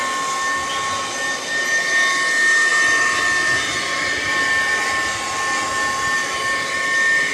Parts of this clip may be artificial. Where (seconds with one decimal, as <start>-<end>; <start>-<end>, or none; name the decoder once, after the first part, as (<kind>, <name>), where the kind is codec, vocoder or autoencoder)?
none